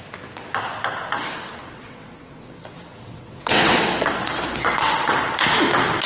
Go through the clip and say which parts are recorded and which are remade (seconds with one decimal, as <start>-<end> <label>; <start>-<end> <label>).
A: 0.0-1.6 recorded; 1.6-5.3 remade; 5.3-6.1 recorded